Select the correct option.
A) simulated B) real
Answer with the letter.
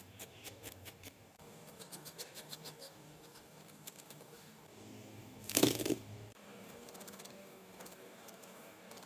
A